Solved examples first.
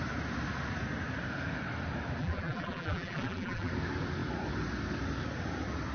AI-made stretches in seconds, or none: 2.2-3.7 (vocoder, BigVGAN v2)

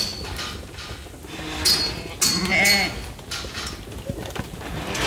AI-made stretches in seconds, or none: none

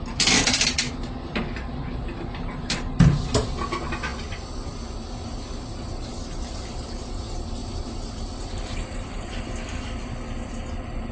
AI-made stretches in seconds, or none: 7.6-9.4 (vocoder, BigVGAN v2)